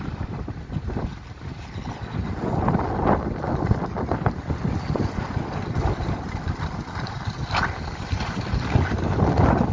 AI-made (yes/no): no